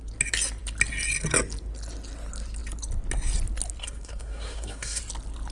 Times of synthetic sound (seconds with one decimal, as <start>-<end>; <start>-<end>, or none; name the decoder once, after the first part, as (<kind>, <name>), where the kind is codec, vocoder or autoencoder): 3.8-5.0 (codec, SNAC)